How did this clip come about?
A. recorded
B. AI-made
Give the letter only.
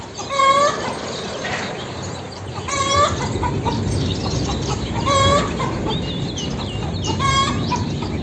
A